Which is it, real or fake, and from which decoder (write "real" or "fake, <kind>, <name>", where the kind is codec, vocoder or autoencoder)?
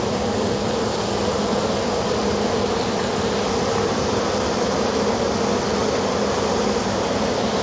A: real